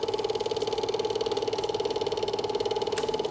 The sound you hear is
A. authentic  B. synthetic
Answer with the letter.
A